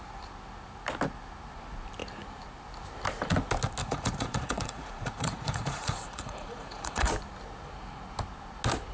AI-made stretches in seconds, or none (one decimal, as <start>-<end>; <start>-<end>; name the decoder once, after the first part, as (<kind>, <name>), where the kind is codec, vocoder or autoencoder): 3.8-7.1 (vocoder, Vocos)